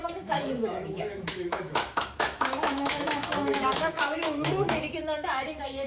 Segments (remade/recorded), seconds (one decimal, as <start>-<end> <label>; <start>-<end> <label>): 0.0-5.9 remade

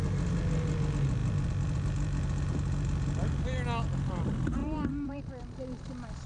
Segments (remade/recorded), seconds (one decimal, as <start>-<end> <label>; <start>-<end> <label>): 0.0-4.6 recorded; 4.6-5.2 remade; 5.2-6.3 recorded

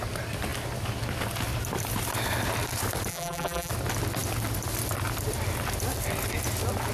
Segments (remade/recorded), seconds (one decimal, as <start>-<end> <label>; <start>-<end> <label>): 0.0-3.1 recorded; 3.1-3.7 remade; 3.7-6.9 recorded

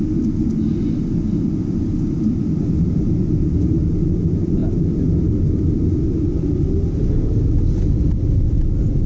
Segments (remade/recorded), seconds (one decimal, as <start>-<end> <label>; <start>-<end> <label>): 0.0-9.1 recorded

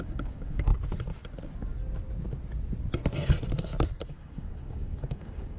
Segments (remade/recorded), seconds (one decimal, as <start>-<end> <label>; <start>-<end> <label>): 0.0-0.7 remade; 0.7-4.1 recorded; 4.1-5.6 remade

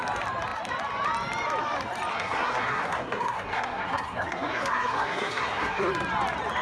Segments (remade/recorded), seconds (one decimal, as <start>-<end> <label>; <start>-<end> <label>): 0.0-2.1 recorded; 2.1-5.9 remade; 5.9-6.6 recorded

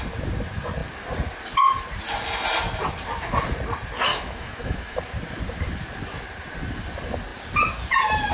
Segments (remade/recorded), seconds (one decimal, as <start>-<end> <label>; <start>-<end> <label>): 0.0-4.1 recorded; 4.1-5.0 remade; 5.0-8.3 recorded